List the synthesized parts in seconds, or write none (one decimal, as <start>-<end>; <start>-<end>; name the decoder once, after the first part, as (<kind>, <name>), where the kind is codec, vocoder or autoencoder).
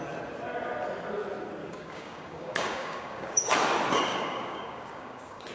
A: 1.6-3.5 (codec, DAC); 4.1-5.5